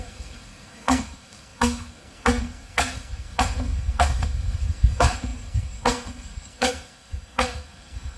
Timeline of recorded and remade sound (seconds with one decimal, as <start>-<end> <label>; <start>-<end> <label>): 0.0-8.2 remade